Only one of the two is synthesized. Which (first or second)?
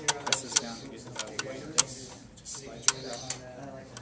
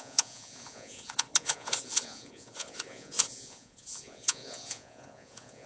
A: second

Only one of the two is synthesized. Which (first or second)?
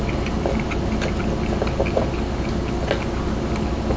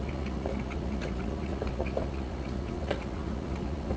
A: second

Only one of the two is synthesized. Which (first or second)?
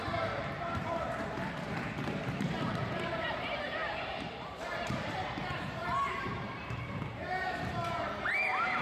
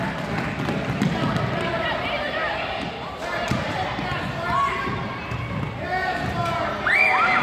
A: first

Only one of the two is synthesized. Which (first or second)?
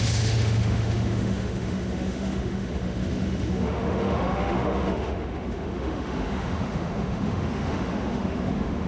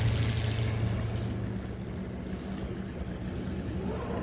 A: first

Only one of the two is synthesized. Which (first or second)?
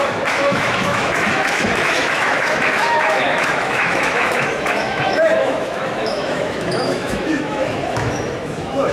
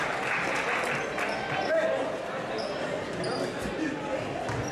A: first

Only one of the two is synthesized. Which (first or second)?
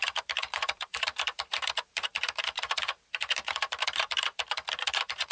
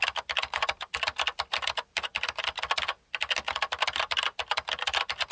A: first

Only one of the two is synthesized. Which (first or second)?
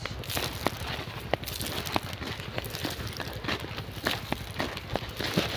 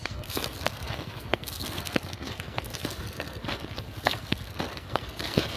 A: second